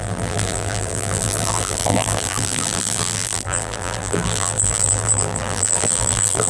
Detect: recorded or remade remade